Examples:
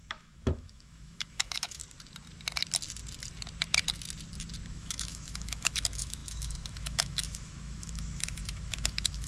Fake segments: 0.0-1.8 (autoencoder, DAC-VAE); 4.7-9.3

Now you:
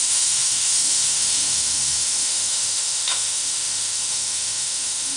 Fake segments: 0.0-5.2 (autoencoder, DAC-VAE)

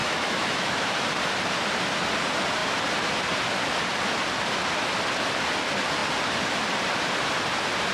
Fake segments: 0.0-0.9 (autoencoder, DAC-VAE)

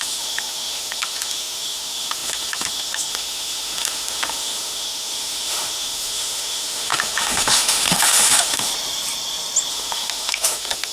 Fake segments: 0.0-8.7 (autoencoder, DAC-VAE); 9.7-10.9

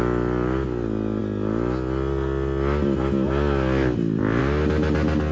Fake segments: none